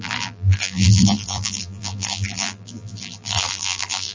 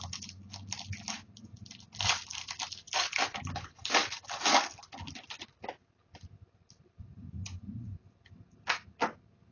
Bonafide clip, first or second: second